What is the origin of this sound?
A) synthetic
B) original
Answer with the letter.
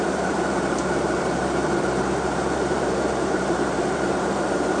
A